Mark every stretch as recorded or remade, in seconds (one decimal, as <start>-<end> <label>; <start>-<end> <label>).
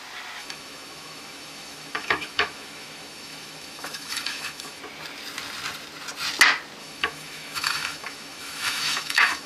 0.0-0.4 recorded; 0.4-4.8 remade; 4.8-6.8 recorded; 6.8-9.5 remade